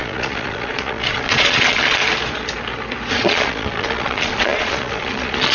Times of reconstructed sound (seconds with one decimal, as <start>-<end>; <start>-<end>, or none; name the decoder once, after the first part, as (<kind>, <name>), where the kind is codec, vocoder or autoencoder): 0.0-2.0 (vocoder, Vocos); 3.1-5.5

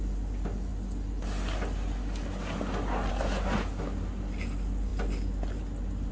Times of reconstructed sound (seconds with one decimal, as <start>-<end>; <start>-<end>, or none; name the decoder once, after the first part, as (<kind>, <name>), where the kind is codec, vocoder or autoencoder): none

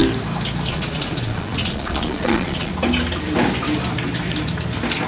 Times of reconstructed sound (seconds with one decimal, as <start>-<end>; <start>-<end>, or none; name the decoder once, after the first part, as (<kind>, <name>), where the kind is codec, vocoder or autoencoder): 0.7-2.7 (vocoder, Vocos)

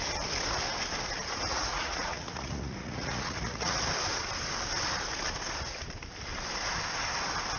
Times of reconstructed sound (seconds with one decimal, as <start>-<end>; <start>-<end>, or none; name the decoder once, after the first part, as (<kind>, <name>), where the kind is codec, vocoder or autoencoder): 1.5-3.8 (vocoder, Vocos)